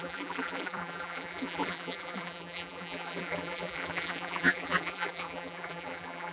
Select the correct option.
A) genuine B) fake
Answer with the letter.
B